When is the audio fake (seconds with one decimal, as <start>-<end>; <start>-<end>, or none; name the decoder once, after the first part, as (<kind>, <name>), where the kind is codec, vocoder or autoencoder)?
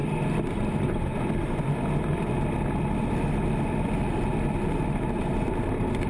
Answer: 0.7-1.1 (vocoder, BigVGAN v2); 4.6-6.1